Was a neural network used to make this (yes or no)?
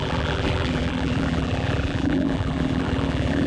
yes